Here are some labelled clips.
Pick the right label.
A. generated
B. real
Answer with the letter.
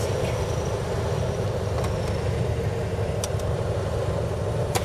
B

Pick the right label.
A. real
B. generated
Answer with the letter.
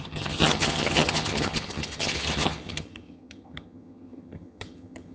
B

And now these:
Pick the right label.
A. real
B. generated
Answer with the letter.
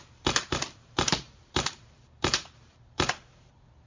B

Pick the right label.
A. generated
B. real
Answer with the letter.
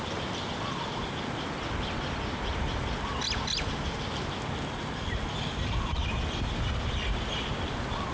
B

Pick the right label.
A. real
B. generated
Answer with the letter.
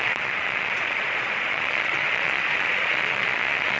B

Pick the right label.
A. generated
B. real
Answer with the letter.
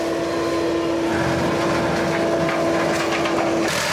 B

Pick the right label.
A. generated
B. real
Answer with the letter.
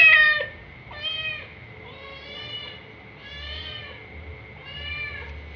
B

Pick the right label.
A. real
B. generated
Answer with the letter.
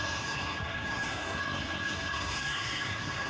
B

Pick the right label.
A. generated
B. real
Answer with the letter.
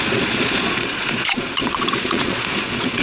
A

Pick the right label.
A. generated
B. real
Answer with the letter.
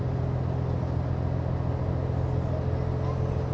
B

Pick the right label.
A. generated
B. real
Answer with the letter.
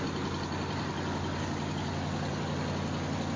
B